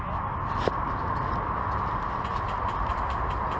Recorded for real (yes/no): yes